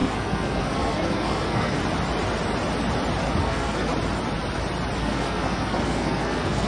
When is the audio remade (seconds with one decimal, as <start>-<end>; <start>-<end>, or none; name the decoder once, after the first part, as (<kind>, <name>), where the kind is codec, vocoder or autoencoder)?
0.0-1.8 (codec, SNAC); 3.4-3.9; 5.0-6.7